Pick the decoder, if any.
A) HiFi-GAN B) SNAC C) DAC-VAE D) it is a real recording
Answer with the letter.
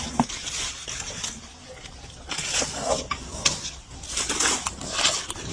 D